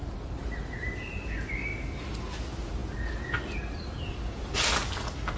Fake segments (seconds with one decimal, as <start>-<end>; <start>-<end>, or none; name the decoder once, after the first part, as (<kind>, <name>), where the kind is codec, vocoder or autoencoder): none